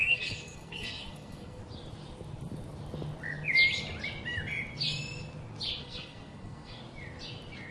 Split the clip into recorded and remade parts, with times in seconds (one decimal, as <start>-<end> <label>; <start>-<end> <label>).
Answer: 0.0-1.6 remade; 1.6-5.8 recorded; 5.8-6.8 remade; 6.8-7.7 recorded